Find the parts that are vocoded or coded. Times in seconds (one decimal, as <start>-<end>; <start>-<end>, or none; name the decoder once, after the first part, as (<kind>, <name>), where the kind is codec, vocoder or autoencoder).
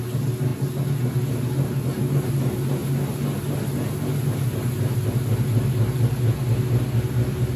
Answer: none